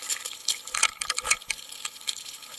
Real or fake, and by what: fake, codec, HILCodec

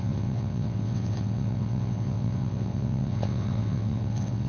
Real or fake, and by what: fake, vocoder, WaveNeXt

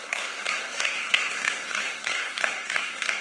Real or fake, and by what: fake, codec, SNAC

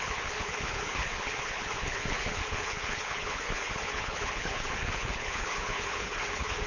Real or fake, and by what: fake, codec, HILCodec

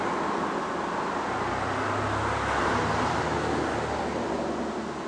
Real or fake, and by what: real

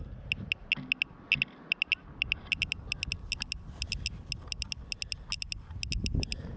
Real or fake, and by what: real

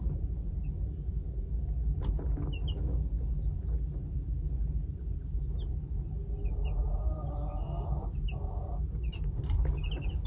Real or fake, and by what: real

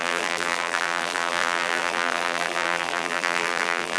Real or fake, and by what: fake, vocoder, BigVGAN v2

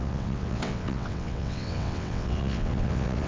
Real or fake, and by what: fake, vocoder, WaveNeXt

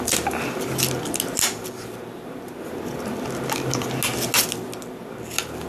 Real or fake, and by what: real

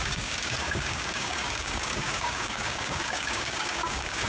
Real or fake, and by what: fake, codec, DAC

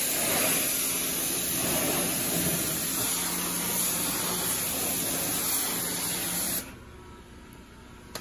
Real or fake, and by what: real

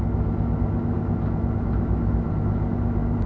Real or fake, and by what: fake, autoencoder, DAC-VAE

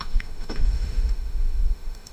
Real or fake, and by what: fake, autoencoder, DAC-VAE